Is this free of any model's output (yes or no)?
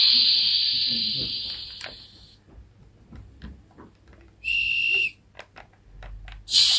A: yes